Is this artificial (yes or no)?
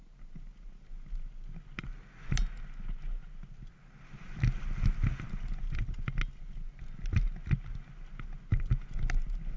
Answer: no